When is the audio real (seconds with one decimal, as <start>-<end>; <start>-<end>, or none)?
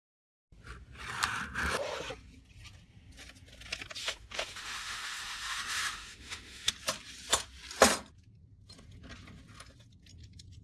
0.0-4.0; 6.7-10.6